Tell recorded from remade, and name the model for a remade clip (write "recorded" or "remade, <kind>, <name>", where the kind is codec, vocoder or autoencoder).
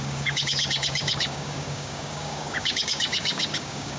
remade, codec, DAC